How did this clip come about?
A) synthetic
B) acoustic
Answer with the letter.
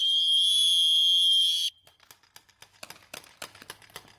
B